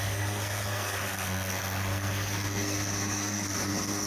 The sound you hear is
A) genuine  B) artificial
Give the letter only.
B